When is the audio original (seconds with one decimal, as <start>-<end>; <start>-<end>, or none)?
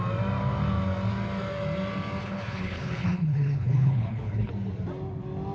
0.0-2.2; 4.5-5.5